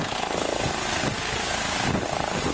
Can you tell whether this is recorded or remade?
recorded